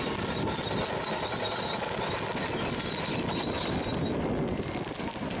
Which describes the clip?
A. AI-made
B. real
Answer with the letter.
B